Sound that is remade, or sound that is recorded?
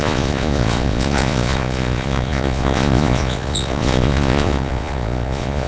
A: remade